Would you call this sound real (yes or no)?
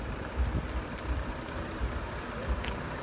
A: no